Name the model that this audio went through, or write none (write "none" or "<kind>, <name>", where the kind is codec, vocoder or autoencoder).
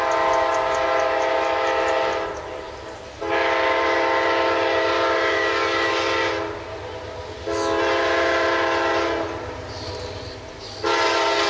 none